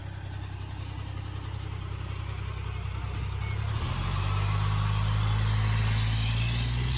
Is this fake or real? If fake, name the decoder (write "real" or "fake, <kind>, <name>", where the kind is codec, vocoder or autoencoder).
real